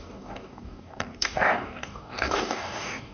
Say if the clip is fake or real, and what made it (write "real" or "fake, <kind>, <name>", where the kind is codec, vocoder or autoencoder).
fake, codec, DAC